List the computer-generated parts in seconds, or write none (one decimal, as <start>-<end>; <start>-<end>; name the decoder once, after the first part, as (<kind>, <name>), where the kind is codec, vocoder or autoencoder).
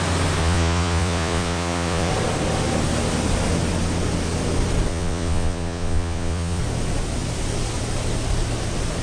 0.4-2.1 (vocoder, Vocos); 4.9-6.6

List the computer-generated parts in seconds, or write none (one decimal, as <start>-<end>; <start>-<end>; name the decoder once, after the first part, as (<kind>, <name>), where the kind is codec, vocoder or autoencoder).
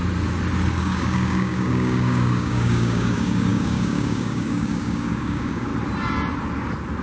0.8-5.7 (codec, DAC)